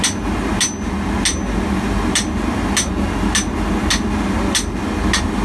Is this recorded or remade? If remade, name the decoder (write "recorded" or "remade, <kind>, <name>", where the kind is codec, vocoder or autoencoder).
recorded